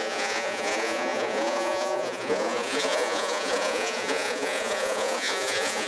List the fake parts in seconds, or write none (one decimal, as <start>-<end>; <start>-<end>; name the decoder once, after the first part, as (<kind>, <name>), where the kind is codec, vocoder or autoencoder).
0.0-5.9 (vocoder, Vocos)